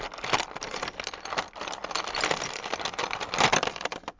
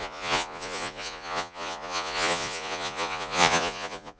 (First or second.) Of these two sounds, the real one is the first